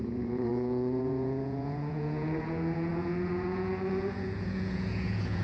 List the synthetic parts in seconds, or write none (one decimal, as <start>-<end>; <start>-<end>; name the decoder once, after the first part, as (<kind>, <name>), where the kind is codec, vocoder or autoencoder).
0.0-5.4 (vocoder, Vocos)

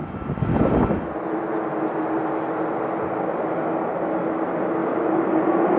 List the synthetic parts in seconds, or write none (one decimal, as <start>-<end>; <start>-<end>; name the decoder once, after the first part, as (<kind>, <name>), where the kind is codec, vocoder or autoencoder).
none